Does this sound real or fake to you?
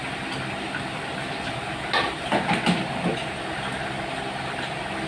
real